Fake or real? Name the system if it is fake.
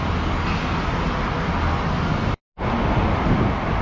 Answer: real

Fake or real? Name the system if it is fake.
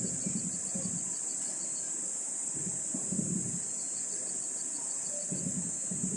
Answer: real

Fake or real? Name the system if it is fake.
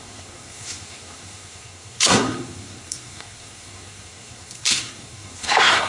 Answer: fake, codec, SNAC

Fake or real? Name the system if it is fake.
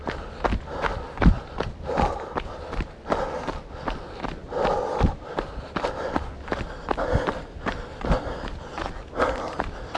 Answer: real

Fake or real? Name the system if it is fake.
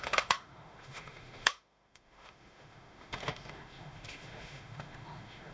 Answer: fake, autoencoder, DAC-VAE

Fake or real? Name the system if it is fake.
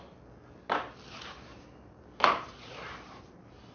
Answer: real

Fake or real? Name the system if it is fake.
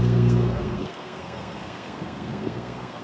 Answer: fake, codec, SNAC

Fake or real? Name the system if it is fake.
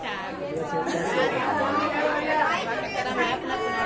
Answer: real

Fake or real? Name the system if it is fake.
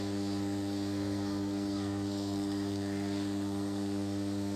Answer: fake, codec, SNAC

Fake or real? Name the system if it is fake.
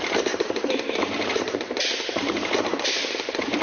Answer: fake, vocoder, BigVGAN v2